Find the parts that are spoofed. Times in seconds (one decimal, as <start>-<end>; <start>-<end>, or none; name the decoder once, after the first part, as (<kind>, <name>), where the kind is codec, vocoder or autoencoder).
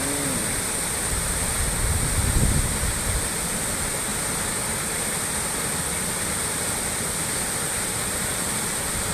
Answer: none